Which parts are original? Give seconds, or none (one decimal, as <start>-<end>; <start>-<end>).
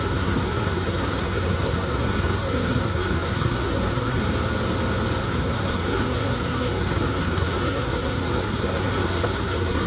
4.2-5.2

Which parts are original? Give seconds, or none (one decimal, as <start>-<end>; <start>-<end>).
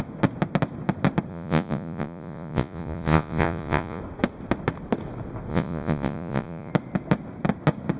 0.0-1.3; 4.0-5.5; 6.7-8.0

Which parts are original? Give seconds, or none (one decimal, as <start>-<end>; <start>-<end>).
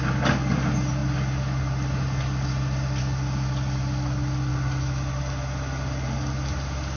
0.0-7.0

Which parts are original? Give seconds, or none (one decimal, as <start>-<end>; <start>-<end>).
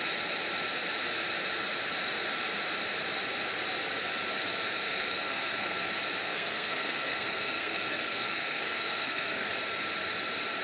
0.0-4.6; 5.8-6.2; 9.5-10.6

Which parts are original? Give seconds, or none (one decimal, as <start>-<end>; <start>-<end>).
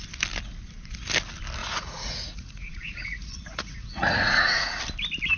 0.0-1.6; 4.8-5.4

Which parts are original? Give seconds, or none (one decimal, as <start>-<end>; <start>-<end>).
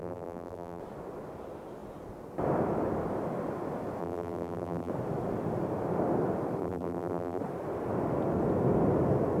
0.8-4.0; 4.9-6.6; 7.4-9.4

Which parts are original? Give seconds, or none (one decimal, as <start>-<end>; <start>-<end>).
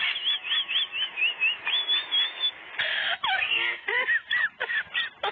0.0-5.3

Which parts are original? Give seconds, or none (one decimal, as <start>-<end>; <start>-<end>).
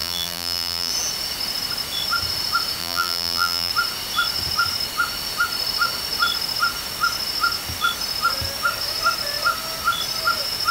0.9-2.8; 3.7-10.7